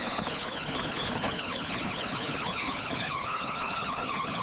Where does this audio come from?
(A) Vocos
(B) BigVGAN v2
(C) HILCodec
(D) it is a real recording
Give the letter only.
C